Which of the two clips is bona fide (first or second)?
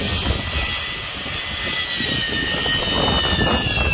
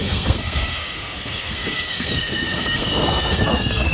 first